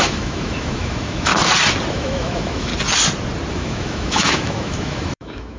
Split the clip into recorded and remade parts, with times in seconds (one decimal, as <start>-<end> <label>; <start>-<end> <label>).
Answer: 0.0-1.3 remade; 1.3-1.9 recorded; 1.9-2.7 remade; 2.7-3.5 recorded; 3.5-5.6 remade